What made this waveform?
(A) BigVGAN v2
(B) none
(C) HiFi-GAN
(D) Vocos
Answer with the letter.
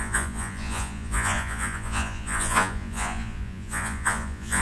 D